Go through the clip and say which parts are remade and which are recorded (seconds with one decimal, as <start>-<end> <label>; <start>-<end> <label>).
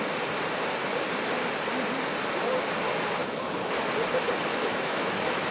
0.0-3.2 recorded; 3.2-3.7 remade; 3.7-4.5 recorded; 4.5-5.5 remade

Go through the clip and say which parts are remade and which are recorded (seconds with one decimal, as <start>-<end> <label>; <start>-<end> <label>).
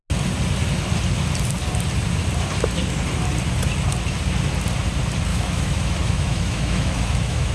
0.0-5.3 recorded; 5.3-7.5 remade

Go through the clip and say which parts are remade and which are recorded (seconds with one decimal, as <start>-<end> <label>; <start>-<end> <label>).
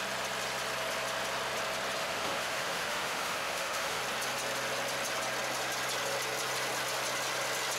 0.0-2.0 recorded; 2.0-4.0 remade; 4.0-7.8 recorded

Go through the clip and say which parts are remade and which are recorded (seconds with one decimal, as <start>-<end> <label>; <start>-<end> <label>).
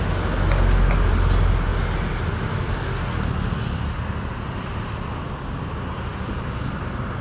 0.0-7.2 recorded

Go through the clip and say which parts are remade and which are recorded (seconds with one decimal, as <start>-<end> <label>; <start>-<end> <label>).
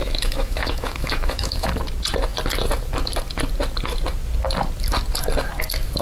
0.0-1.7 remade; 1.7-6.0 recorded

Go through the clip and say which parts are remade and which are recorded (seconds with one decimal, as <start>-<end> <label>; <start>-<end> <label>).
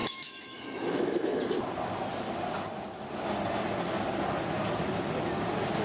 0.0-1.4 remade; 1.4-5.8 recorded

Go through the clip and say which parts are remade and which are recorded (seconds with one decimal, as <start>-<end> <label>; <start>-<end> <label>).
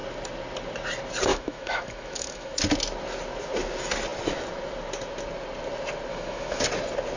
0.0-1.3 recorded; 1.3-2.6 remade; 2.6-6.1 recorded; 6.1-6.6 remade; 6.6-7.2 recorded